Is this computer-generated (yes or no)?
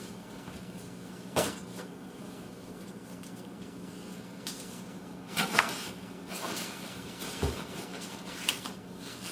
yes